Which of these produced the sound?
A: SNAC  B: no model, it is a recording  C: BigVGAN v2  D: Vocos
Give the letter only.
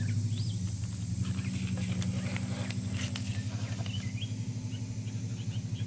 B